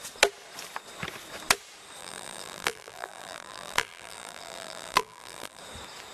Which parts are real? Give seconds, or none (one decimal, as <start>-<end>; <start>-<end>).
0.0-2.0; 5.6-6.1